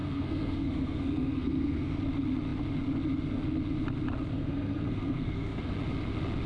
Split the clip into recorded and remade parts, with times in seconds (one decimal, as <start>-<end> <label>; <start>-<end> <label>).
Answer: 0.0-2.0 remade; 2.0-4.3 recorded; 4.3-5.7 remade; 5.7-6.5 recorded